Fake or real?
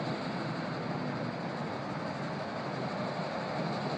real